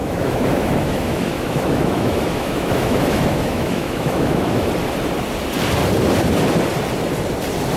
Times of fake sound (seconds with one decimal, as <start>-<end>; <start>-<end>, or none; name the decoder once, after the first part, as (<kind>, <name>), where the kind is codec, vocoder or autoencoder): 0.0-4.7 (autoencoder, DAC-VAE)